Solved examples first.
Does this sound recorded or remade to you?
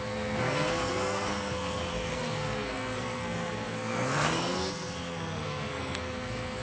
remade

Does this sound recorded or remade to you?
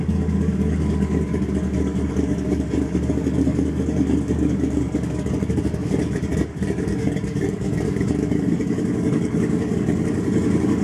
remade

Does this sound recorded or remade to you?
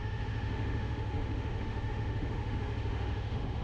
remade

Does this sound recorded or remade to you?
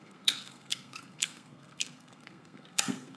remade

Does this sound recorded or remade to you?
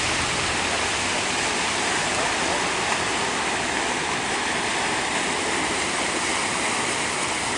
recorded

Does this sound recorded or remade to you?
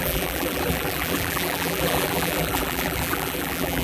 remade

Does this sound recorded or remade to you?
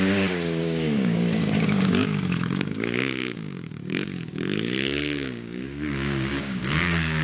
remade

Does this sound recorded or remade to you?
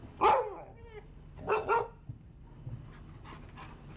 recorded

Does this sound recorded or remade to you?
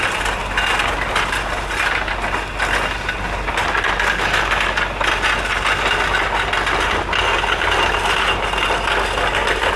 recorded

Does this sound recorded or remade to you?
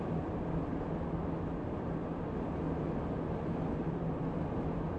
recorded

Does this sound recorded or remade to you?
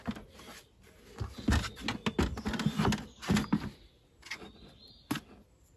recorded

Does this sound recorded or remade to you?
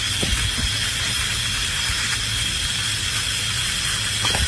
recorded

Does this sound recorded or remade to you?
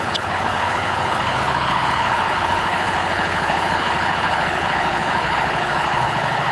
remade